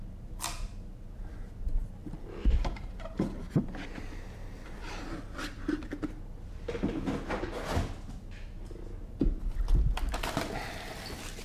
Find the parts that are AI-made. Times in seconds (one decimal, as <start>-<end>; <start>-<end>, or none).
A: 2.0-5.8